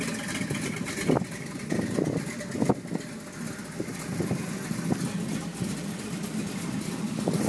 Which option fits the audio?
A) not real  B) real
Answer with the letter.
B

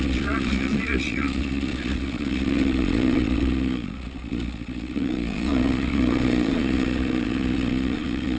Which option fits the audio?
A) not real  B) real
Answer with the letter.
A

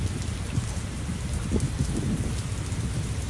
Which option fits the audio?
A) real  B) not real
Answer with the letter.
A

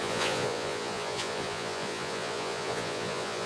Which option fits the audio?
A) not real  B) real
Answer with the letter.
A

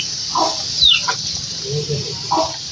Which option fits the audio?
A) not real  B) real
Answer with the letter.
A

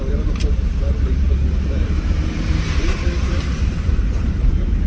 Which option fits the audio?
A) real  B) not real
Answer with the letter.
B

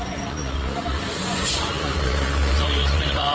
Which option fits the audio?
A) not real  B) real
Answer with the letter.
A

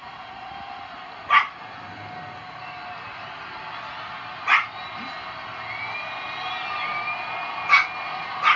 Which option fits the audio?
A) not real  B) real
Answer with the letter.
B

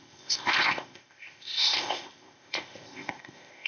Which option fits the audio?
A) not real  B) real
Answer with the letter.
A